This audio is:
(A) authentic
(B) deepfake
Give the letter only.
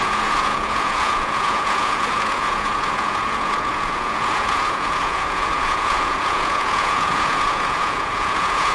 B